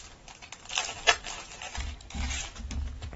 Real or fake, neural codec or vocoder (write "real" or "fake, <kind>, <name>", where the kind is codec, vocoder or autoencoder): real